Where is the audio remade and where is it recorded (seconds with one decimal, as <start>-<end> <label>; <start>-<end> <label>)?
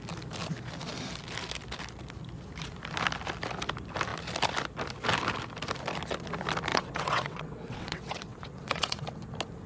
0.0-6.7 recorded; 6.7-9.2 remade; 9.2-9.7 recorded